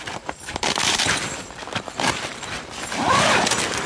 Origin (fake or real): fake